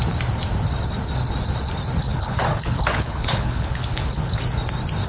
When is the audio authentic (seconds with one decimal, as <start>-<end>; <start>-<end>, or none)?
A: 0.0-2.0; 4.4-5.1